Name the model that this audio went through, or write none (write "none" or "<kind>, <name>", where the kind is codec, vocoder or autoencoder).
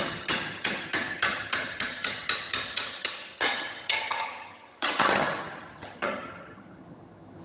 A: vocoder, HiFi-GAN